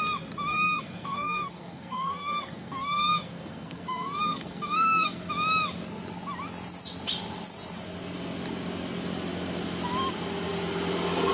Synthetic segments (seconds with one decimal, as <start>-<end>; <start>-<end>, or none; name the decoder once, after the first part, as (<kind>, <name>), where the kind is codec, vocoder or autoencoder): 0.5-5.3 (codec, SNAC)